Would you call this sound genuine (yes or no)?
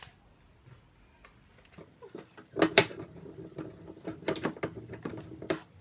yes